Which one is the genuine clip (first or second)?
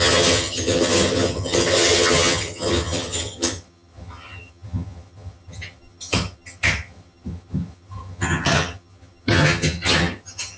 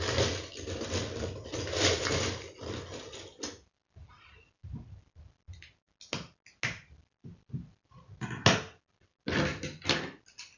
second